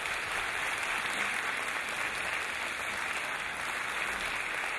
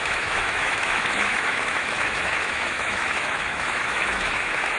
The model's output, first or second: second